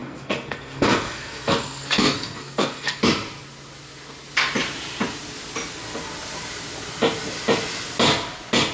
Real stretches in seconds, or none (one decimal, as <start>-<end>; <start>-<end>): 3.0-8.7